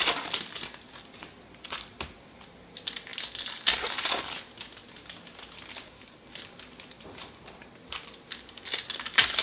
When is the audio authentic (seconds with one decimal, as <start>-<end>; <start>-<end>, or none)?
0.0-9.4